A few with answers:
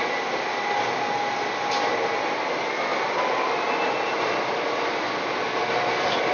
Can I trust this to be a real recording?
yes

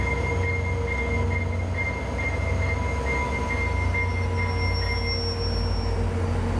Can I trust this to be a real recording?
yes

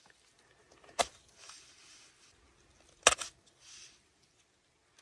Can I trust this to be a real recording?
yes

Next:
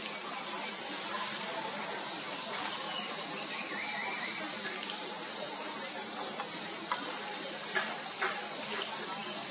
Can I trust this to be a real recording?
yes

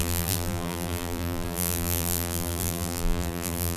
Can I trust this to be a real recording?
no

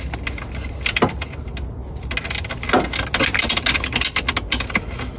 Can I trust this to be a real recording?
yes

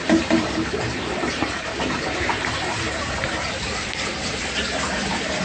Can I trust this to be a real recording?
no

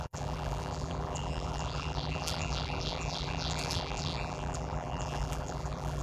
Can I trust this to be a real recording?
no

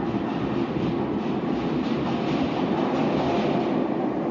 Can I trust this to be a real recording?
yes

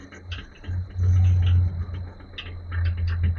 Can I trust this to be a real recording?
yes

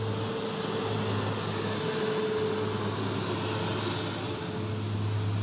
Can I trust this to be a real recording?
yes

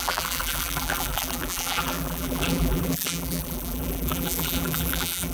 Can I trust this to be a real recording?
no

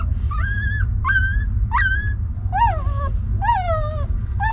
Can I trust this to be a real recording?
yes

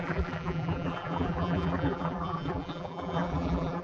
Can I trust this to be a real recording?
no